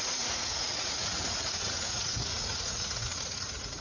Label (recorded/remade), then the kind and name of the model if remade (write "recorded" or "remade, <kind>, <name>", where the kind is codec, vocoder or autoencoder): remade, vocoder, Vocos